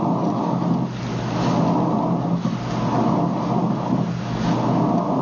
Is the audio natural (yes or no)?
yes